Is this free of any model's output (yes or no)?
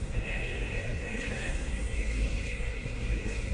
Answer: no